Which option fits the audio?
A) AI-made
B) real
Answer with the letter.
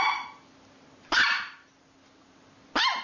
B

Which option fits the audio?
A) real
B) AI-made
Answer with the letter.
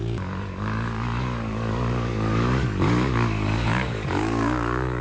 B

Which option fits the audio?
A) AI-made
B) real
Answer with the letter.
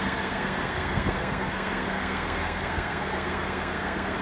A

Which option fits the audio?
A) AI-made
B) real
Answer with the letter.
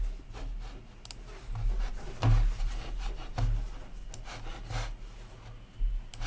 B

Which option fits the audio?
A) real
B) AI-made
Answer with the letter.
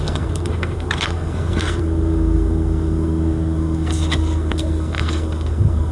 B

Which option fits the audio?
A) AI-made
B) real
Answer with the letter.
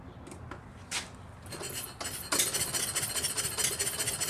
B